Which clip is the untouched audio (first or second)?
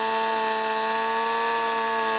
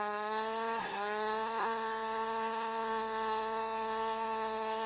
first